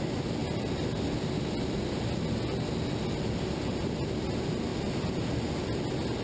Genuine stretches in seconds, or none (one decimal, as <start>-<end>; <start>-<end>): 0.0-6.2